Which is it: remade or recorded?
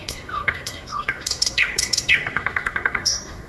remade